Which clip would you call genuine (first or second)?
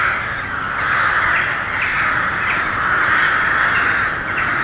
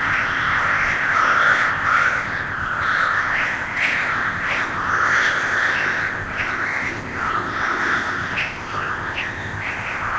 first